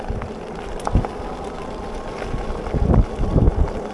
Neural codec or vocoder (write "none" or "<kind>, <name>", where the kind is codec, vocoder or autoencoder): none